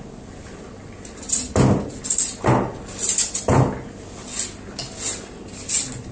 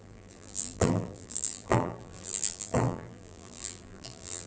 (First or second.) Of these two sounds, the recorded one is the first